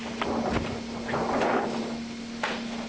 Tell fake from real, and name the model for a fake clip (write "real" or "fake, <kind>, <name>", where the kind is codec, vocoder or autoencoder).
real